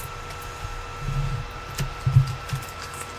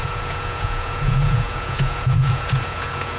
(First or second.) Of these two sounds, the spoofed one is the second